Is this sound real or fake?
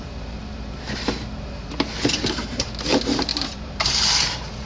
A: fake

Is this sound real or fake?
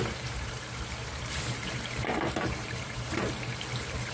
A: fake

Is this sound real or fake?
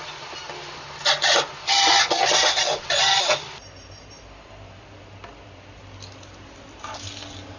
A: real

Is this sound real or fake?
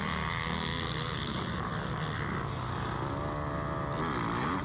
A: real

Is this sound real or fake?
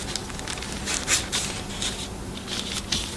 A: real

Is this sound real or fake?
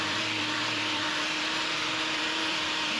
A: fake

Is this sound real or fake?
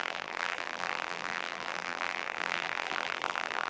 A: fake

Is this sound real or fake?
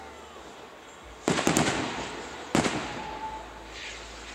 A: real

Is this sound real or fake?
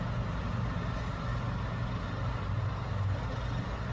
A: real